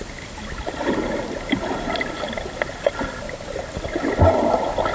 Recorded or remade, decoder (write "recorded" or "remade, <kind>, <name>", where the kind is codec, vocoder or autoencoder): recorded